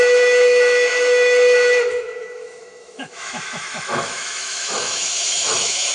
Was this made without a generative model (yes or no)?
no